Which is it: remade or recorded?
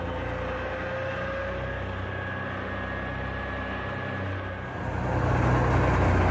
recorded